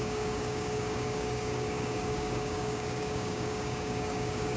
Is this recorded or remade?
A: remade